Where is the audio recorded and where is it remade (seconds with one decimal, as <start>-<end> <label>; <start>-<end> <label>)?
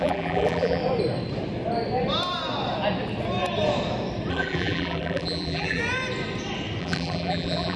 0.0-0.8 remade; 0.8-4.3 recorded; 4.3-5.8 remade; 5.8-6.8 recorded; 6.8-7.8 remade